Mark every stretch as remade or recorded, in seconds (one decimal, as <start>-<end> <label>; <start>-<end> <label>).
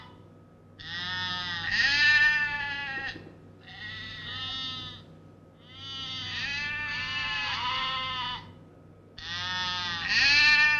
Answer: 0.0-10.8 recorded